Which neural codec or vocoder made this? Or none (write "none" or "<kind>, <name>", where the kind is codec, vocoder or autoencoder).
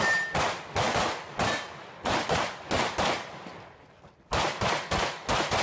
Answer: none